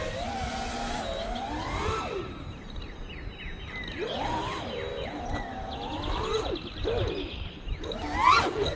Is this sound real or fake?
real